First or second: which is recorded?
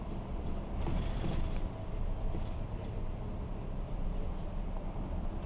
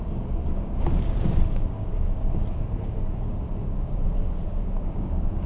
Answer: first